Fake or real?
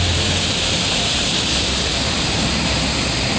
fake